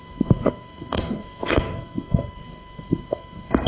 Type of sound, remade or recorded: remade